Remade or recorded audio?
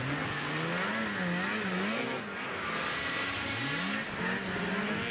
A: recorded